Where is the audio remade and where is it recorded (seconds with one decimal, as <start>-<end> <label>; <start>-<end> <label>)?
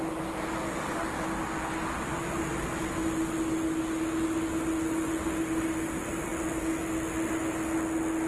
0.0-8.3 recorded